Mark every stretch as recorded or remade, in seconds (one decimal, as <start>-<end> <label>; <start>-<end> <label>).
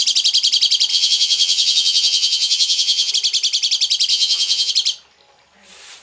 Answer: 0.0-0.9 recorded; 0.9-3.1 remade; 3.1-4.1 recorded; 4.1-4.7 remade; 4.7-6.0 recorded